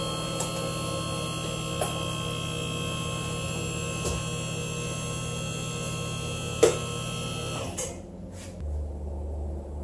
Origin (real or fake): real